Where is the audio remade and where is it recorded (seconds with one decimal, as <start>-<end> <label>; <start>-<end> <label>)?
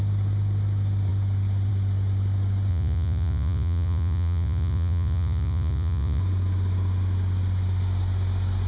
0.0-2.7 recorded; 2.7-6.2 remade; 6.2-8.7 recorded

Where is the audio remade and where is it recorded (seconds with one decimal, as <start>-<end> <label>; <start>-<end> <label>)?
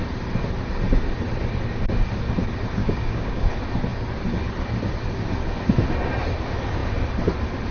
0.0-2.8 recorded; 2.8-3.5 remade; 3.5-7.7 recorded